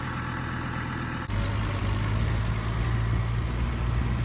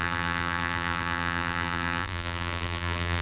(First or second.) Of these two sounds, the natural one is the first